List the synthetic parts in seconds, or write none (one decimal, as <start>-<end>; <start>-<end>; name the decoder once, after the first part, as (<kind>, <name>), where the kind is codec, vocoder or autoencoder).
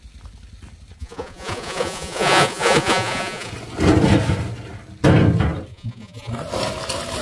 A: 1.0-3.5 (vocoder, Vocos); 5.7-6.3